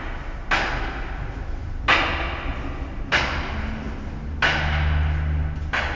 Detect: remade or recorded recorded